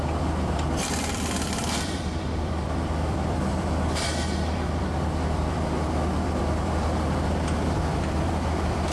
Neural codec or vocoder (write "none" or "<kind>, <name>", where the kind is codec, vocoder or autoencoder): vocoder, BigVGAN v2